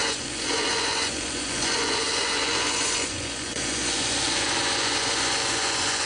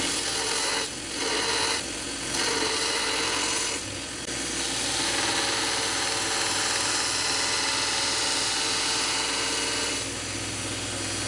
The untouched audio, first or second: second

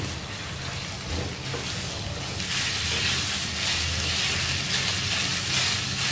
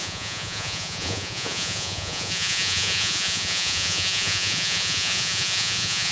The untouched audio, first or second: first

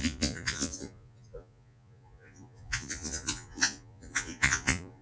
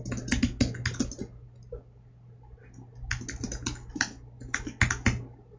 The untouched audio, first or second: second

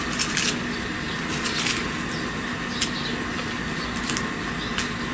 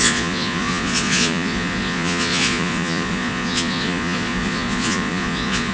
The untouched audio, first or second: first